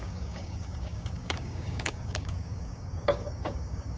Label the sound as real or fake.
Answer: fake